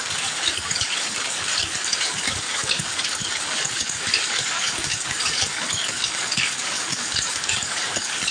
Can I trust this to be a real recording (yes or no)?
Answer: no